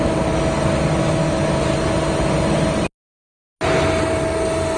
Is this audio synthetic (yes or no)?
no